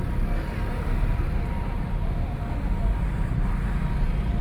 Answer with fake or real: real